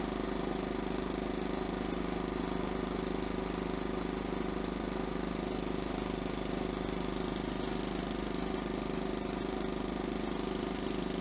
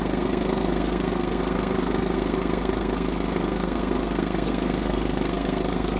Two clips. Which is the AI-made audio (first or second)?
second